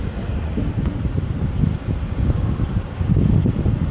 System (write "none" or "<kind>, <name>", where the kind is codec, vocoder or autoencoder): none